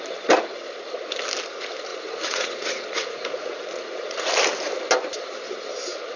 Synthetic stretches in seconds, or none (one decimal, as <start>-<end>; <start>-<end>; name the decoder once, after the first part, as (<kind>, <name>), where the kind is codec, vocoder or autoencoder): 1.9-4.3 (vocoder, Vocos)